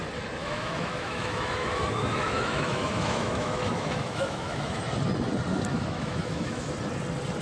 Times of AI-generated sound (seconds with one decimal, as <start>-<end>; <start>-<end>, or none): 0.4-4.8; 5.7-6.7